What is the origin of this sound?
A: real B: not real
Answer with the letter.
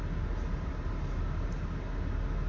A